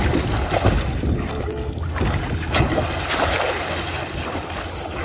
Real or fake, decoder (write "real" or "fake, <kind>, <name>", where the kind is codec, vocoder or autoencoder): real